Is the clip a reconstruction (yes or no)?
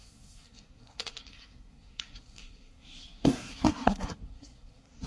yes